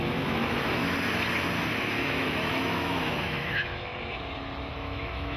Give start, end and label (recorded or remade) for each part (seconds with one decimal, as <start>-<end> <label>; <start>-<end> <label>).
0.0-0.8 remade; 0.8-1.8 recorded; 1.8-3.9 remade; 3.9-4.7 recorded; 4.7-5.4 remade